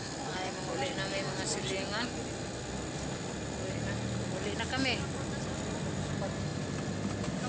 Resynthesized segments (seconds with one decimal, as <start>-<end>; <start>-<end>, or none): none